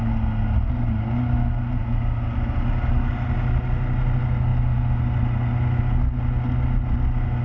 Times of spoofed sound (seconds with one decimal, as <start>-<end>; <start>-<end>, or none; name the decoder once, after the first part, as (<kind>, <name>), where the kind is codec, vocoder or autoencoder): none